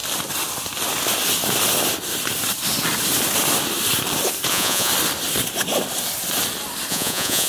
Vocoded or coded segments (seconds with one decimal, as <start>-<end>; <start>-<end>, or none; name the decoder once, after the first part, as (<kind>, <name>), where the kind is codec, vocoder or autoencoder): 4.5-4.9 (vocoder, Vocos); 6.9-7.5